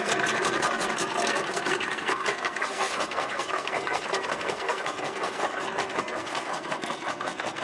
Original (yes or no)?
no